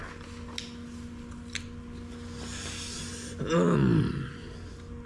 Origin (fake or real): real